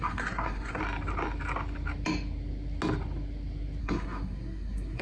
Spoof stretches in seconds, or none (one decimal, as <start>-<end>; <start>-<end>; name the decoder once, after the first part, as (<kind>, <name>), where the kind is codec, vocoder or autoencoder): 0.0-0.8 (codec, SNAC); 3.8-5.0